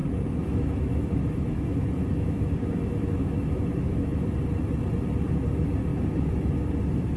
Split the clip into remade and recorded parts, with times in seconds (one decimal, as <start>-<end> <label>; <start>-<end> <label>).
0.0-4.2 remade; 4.2-7.2 recorded